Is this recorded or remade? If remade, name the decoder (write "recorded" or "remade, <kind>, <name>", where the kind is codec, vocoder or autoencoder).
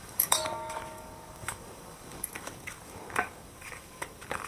remade, codec, DAC